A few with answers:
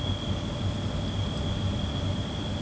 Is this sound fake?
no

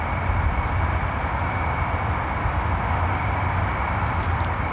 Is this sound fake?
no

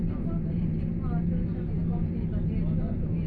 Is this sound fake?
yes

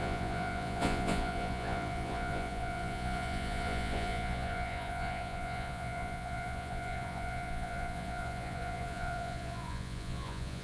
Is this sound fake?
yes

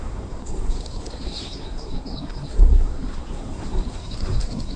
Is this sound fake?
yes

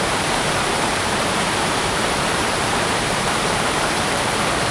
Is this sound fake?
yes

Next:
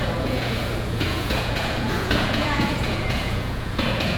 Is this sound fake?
yes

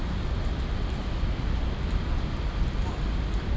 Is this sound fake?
no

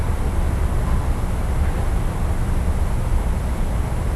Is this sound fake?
no